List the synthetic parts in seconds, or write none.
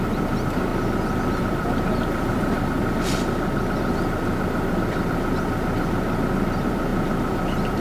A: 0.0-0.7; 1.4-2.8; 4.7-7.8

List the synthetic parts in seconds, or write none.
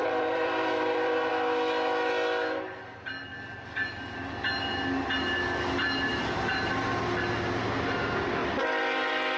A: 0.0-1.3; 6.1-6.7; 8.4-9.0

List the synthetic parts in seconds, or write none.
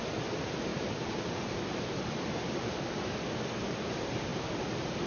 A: 0.7-3.4; 4.3-5.1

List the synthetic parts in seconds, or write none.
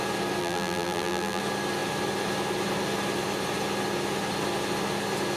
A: 0.4-1.4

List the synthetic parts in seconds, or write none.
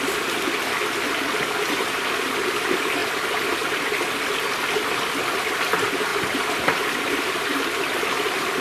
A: 6.1-7.6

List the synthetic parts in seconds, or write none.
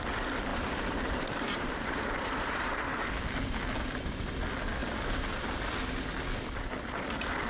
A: 0.5-2.7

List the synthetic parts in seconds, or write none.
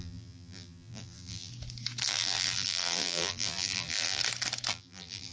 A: 0.0-1.5; 2.1-4.2; 4.7-5.3